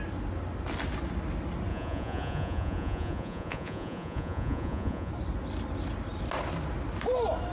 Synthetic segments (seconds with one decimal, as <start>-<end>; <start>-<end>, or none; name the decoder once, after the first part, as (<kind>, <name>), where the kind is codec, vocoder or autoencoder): 1.7-5.1 (vocoder, Vocos)